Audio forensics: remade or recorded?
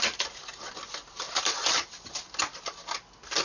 recorded